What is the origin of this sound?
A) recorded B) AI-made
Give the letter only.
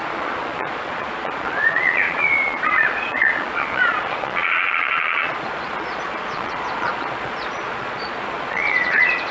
B